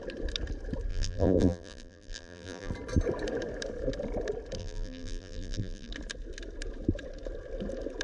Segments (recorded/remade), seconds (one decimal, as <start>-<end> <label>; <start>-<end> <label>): 0.0-0.9 recorded; 0.9-2.7 remade; 2.7-4.6 recorded; 4.6-5.9 remade; 5.9-8.0 recorded